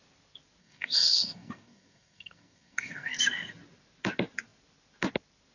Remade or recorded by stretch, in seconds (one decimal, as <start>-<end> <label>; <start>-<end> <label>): 0.0-0.6 recorded; 0.6-3.2 remade; 3.2-5.5 recorded